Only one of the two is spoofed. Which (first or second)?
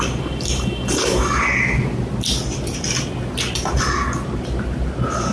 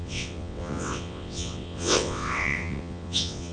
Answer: second